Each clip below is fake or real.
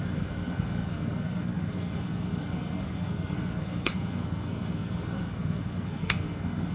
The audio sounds fake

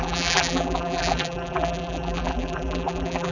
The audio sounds fake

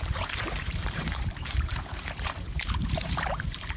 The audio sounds fake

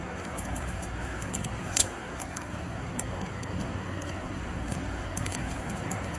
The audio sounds fake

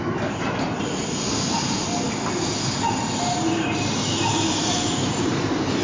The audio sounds real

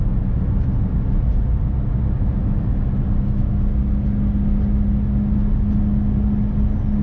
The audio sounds real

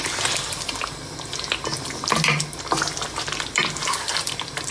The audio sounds real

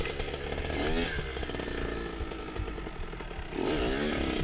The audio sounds real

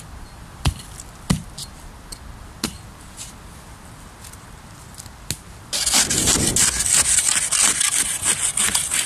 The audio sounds real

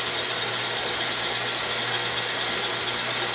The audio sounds real